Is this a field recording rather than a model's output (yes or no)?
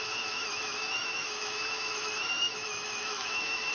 no